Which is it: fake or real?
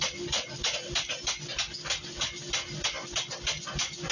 real